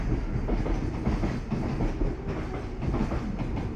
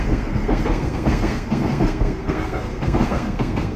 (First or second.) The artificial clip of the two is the second